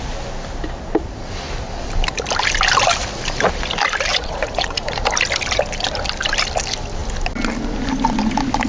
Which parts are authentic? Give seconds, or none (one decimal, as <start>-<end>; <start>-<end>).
0.0-4.1; 5.1-8.7